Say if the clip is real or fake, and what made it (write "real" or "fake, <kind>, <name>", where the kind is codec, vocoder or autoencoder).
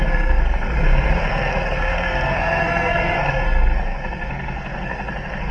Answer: fake, codec, SNAC